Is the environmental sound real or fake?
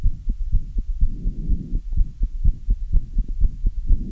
real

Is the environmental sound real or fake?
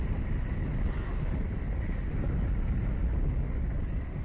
real